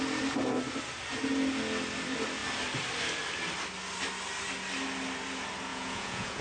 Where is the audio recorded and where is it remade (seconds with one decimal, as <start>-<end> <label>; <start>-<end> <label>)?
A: 0.0-5.7 recorded; 5.7-6.4 remade